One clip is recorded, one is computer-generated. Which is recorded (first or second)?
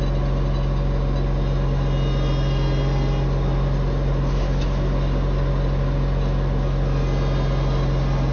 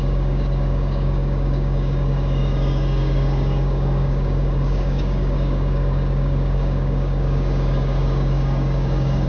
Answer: first